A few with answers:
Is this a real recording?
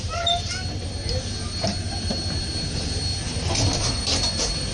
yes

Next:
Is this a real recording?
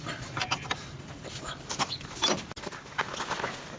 yes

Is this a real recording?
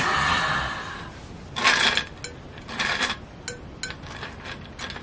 yes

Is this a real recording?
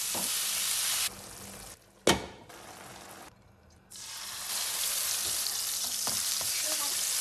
yes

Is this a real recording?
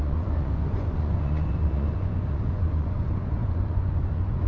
no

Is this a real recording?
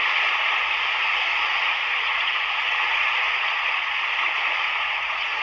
no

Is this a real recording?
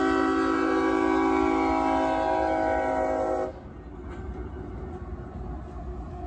yes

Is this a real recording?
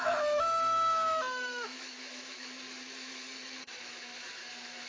no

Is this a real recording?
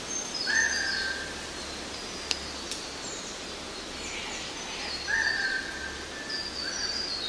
yes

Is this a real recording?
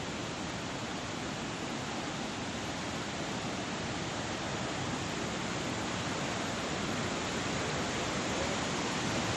no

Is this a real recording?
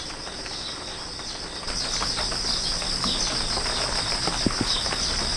yes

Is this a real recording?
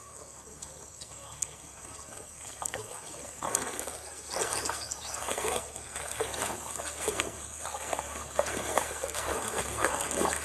no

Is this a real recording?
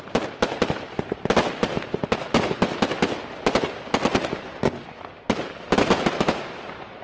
yes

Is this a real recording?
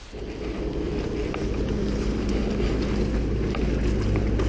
yes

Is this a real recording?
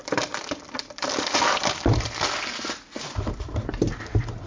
no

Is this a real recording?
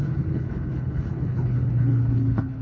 no